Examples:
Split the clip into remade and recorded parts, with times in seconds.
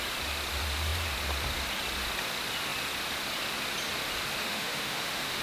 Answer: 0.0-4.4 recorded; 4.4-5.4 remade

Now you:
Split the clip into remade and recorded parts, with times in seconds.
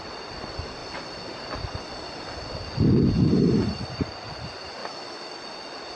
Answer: 0.0-4.8 recorded; 4.8-5.3 remade; 5.3-6.0 recorded